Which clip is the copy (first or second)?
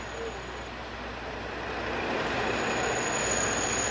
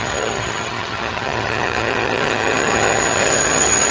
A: second